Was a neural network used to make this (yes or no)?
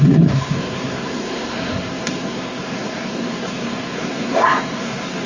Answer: yes